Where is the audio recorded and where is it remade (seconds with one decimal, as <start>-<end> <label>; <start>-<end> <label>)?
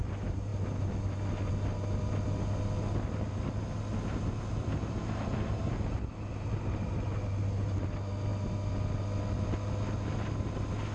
0.0-10.9 recorded